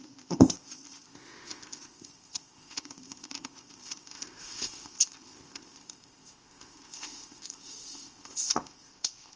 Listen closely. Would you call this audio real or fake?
fake